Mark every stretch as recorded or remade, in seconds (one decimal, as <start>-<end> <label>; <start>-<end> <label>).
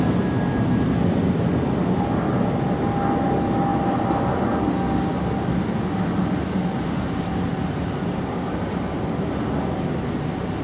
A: 0.0-10.6 recorded